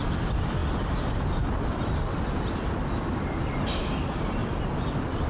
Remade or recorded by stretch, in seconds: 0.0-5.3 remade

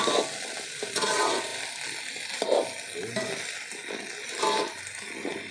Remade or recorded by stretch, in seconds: 0.0-5.5 recorded

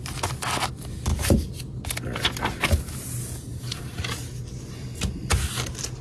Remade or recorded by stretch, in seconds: 0.0-3.5 recorded; 3.5-4.3 remade; 4.3-6.0 recorded

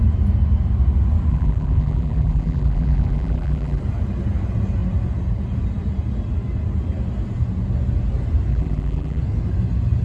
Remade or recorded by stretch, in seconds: 0.0-1.3 recorded; 1.3-3.8 remade; 3.8-8.5 recorded; 8.5-9.2 remade; 9.2-10.0 recorded

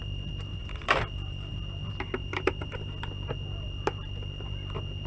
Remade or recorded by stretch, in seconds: 0.0-0.6 recorded; 0.6-1.5 remade; 1.5-2.2 recorded; 2.2-3.0 remade; 3.0-5.1 recorded

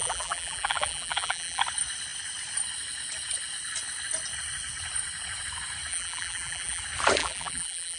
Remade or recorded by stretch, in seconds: 0.0-1.6 remade; 1.6-5.9 recorded; 5.9-6.8 remade; 6.8-7.2 recorded; 7.2-8.0 remade